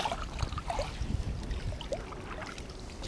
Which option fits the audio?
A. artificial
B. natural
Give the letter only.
B